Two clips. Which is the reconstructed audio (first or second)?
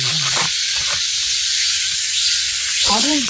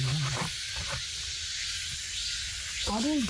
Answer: first